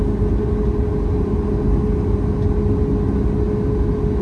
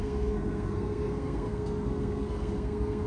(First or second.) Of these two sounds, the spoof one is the second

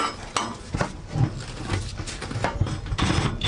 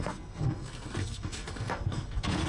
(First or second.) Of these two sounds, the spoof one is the second